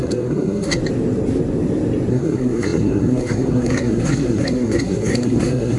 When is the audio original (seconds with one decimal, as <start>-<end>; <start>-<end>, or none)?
0.8-2.1